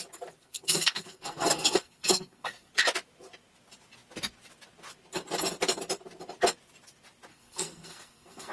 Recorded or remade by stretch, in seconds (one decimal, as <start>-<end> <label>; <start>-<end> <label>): 0.0-0.4 recorded; 0.4-2.7 remade; 2.7-7.3 recorded; 7.3-8.5 remade